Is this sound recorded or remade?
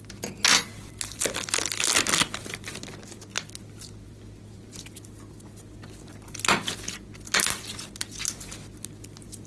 recorded